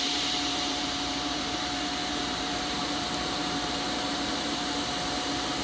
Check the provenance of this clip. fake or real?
fake